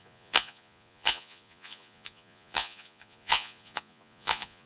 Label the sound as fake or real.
fake